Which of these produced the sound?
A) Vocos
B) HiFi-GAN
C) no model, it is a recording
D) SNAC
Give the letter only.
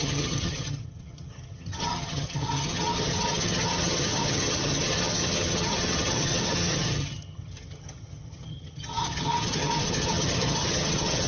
B